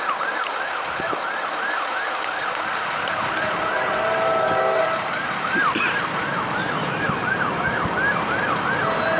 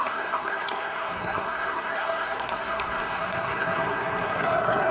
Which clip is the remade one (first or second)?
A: second